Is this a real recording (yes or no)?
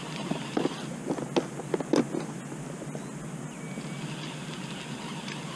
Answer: yes